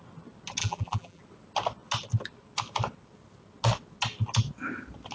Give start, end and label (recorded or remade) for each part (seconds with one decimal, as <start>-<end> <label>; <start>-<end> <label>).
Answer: 0.0-0.6 recorded; 0.6-1.2 remade; 1.2-5.1 recorded